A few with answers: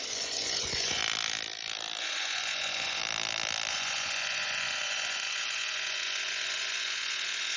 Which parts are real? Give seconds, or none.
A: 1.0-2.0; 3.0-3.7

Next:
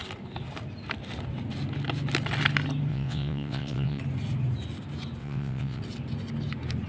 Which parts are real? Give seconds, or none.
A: 0.0-2.9; 4.0-5.2; 5.8-6.9

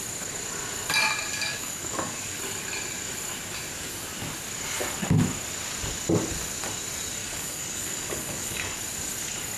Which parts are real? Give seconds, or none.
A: 0.0-1.3; 2.4-7.2; 8.8-9.6

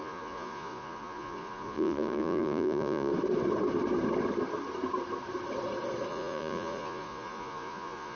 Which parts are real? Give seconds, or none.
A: 3.1-6.1